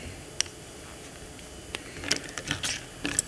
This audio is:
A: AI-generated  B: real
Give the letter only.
B